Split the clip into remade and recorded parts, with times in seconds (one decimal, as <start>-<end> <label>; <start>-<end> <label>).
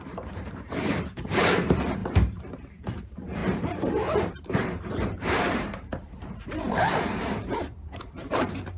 0.0-8.8 remade